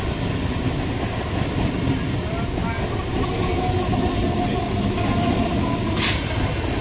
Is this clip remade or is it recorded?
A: recorded